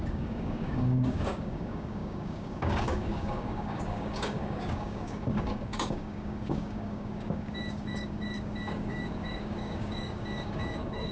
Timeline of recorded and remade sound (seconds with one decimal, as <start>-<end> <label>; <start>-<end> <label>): 0.0-11.1 remade